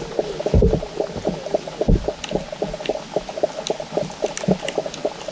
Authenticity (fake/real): real